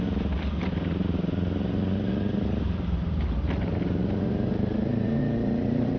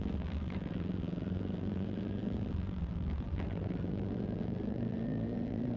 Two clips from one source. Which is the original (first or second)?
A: first